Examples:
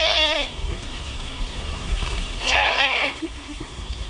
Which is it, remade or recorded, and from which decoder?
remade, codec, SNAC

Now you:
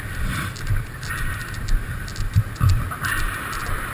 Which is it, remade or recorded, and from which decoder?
recorded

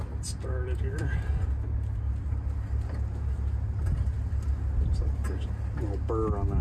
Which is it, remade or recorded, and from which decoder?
recorded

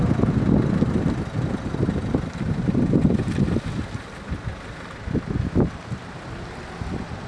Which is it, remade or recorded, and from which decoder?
recorded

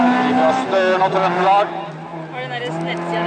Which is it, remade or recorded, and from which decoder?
recorded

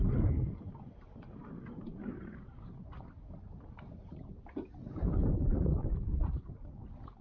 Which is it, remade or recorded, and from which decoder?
remade, vocoder, BigVGAN v2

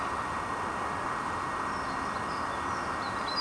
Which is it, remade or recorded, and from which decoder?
recorded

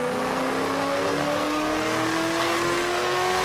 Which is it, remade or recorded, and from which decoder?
remade, codec, SNAC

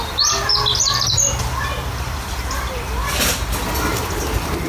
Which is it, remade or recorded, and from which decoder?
recorded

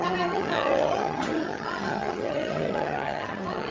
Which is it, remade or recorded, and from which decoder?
remade, vocoder, HiFi-GAN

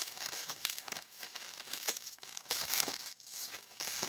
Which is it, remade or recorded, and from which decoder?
remade, codec, DAC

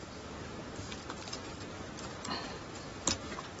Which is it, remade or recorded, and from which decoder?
recorded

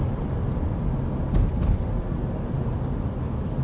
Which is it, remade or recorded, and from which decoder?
recorded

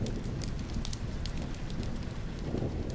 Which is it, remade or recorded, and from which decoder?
recorded